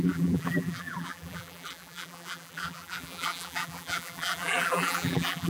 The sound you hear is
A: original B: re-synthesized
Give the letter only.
B